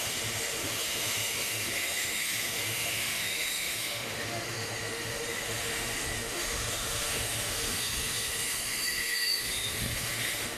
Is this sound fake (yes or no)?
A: yes